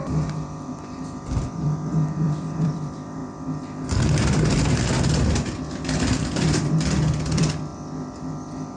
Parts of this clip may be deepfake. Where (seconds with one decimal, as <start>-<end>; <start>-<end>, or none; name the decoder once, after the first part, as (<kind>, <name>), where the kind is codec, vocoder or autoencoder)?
0.0-3.2 (vocoder, BigVGAN v2); 6.0-7.7